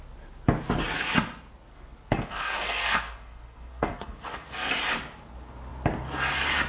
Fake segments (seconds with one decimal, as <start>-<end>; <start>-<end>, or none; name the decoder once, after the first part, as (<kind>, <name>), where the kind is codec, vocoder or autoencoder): 1.7-4.7 (codec, SNAC)